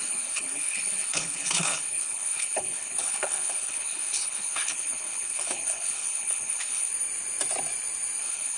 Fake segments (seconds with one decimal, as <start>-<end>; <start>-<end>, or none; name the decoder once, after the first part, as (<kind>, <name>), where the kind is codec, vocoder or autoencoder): 0.0-6.9 (codec, HILCodec); 8.2-8.6